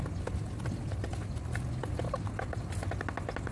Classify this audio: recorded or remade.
recorded